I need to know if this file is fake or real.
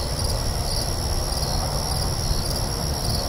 real